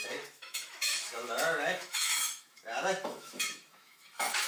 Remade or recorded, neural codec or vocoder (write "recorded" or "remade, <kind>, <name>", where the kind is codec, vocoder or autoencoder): remade, autoencoder, DAC-VAE